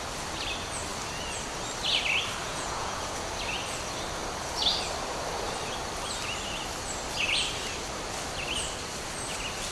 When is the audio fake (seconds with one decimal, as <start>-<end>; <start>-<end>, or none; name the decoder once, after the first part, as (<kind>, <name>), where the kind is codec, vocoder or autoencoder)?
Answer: 2.5-3.3 (vocoder, Vocos)